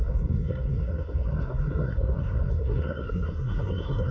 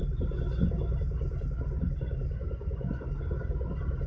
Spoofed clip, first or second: first